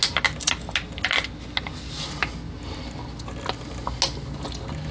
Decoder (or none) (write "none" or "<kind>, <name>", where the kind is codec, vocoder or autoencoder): none